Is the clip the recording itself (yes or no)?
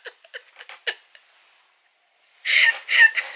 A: yes